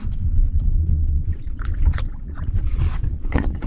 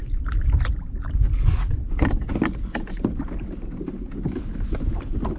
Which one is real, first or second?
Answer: second